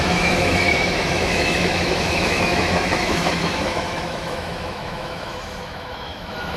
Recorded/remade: remade